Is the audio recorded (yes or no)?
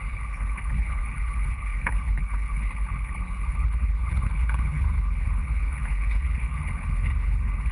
no